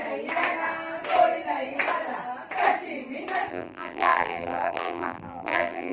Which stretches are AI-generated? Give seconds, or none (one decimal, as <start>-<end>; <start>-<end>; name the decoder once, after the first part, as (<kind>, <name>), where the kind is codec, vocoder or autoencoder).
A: 3.5-5.9 (vocoder, BigVGAN v2)